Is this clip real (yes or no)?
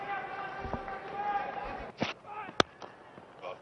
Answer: yes